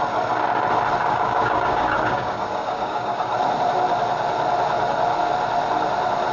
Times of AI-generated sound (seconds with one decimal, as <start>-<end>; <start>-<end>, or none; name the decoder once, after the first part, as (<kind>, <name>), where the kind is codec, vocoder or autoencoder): 1.0-3.3 (codec, DAC)